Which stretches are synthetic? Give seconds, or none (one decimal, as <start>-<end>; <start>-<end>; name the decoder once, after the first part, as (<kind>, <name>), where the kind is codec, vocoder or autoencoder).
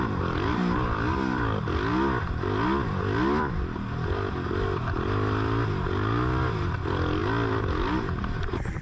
none